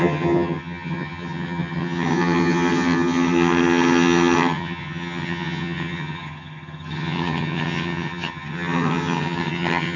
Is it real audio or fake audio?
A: fake